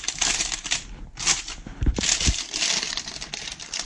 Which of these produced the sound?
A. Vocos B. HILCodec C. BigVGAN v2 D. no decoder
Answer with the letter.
D